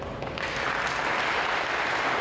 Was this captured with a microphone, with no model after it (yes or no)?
yes